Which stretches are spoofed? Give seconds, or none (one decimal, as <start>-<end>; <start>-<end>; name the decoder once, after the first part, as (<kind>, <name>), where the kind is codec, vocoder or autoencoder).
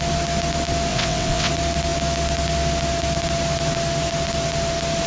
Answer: 0.9-1.5 (vocoder, WaveNeXt)